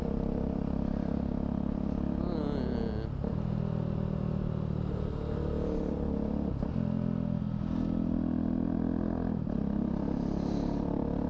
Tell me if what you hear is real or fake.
real